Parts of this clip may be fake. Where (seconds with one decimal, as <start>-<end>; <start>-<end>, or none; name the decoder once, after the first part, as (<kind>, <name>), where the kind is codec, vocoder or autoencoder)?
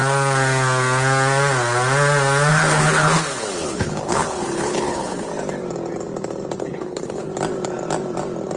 2.5-5.3 (codec, HILCodec); 6.6-7.3